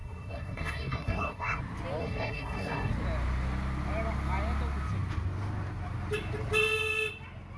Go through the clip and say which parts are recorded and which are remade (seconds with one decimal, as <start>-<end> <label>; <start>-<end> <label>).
0.0-1.6 remade; 1.6-2.0 recorded; 2.0-2.9 remade; 2.9-7.6 recorded